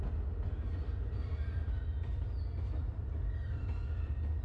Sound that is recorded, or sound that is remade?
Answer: recorded